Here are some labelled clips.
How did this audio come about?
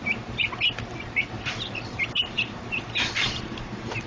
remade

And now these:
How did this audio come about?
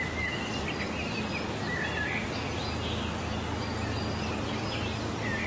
recorded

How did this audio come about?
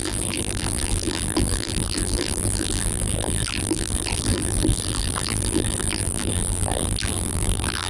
remade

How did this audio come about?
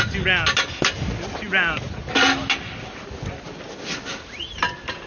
recorded